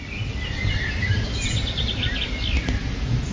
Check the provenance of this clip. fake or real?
real